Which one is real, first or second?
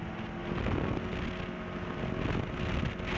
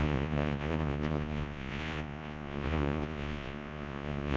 first